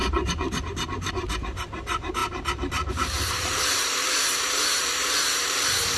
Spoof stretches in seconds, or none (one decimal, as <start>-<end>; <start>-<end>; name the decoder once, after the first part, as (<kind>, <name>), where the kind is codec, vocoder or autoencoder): 0.0-6.0 (vocoder, BigVGAN v2)